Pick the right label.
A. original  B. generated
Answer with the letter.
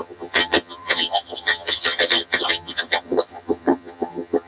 B